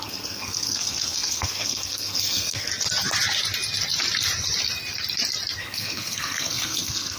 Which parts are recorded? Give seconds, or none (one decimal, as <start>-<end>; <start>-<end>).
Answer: 2.7-5.6